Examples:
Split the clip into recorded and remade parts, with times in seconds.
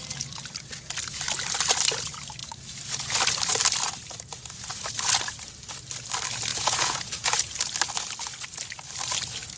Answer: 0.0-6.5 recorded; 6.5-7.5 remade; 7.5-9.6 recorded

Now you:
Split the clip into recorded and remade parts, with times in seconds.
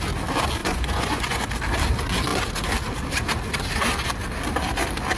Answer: 0.0-0.6 recorded; 0.6-1.5 remade; 1.5-5.2 recorded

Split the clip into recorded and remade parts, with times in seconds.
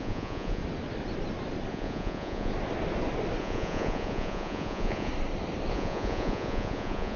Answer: 0.0-0.6 remade; 0.6-1.7 recorded; 1.7-2.5 remade; 2.5-3.4 recorded; 3.4-5.1 remade; 5.1-5.7 recorded; 5.7-7.2 remade